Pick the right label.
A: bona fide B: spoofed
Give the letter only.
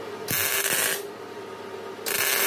A